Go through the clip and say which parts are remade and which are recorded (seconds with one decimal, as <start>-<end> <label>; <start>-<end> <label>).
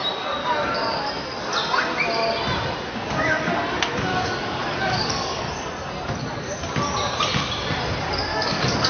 0.0-0.4 recorded; 0.4-1.0 remade; 1.0-4.1 recorded; 4.1-5.4 remade; 5.4-8.3 recorded; 8.3-8.9 remade